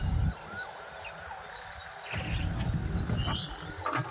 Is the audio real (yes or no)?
yes